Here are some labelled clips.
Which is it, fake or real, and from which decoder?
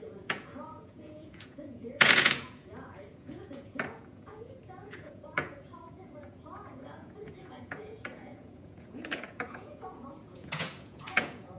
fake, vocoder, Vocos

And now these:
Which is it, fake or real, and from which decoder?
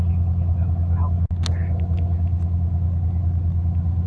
real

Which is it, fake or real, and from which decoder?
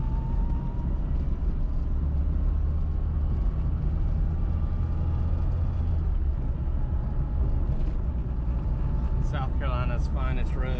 real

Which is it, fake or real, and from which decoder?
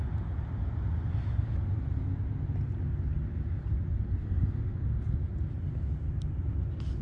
real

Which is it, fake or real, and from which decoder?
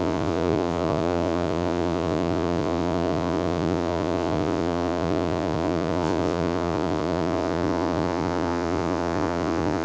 fake, vocoder, Vocos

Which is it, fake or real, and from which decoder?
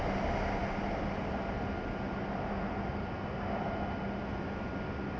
real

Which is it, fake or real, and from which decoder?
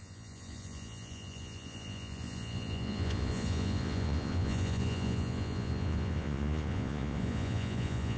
fake, vocoder, Vocos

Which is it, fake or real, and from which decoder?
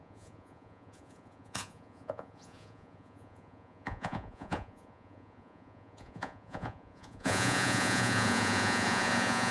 fake, vocoder, Vocos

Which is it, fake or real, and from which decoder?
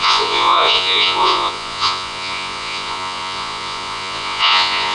fake, vocoder, Vocos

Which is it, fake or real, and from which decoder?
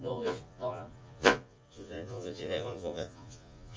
fake, vocoder, Vocos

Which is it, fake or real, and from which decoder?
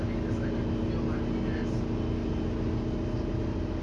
real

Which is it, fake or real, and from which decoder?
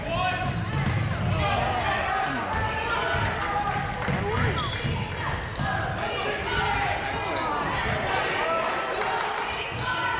real